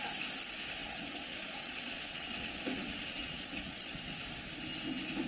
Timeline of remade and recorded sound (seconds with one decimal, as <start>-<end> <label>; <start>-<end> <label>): 0.0-0.8 recorded; 0.8-4.0 remade; 4.0-5.3 recorded